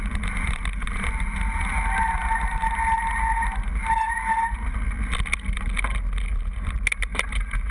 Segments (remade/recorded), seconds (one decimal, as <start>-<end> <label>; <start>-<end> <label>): 0.0-7.1 recorded; 7.1-7.7 remade